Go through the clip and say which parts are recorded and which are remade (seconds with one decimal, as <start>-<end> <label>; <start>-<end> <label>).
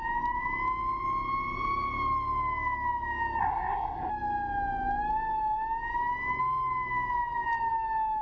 0.0-3.4 recorded; 3.4-4.1 remade; 4.1-8.2 recorded